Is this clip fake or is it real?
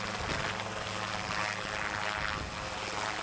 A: real